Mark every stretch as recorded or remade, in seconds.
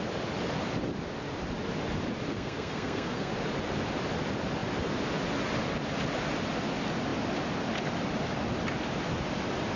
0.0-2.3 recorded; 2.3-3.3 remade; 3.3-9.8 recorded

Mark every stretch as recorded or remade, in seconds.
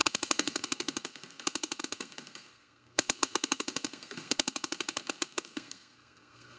0.0-6.6 remade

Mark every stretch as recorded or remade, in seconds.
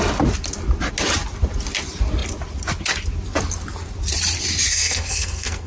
0.0-4.7 recorded; 4.7-5.7 remade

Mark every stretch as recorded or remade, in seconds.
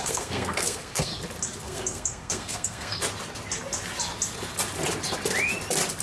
0.0-1.1 remade; 1.1-1.6 recorded; 1.6-3.0 remade; 3.0-6.0 recorded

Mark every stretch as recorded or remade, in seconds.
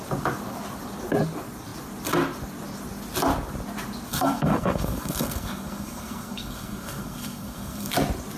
0.0-4.1 recorded; 4.1-7.9 remade; 7.9-8.4 recorded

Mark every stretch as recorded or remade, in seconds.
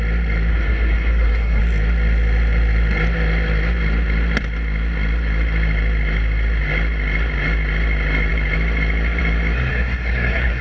0.0-0.5 recorded; 0.5-1.6 remade; 1.6-9.7 recorded; 9.7-10.6 remade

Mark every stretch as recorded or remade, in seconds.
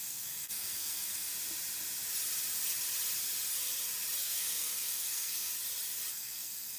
0.0-1.3 remade; 1.3-4.2 recorded; 4.2-5.5 remade; 5.5-6.1 recorded; 6.1-6.8 remade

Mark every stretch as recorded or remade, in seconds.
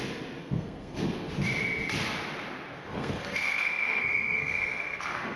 0.0-0.4 recorded; 0.4-1.3 remade; 1.3-2.8 recorded; 2.8-5.4 remade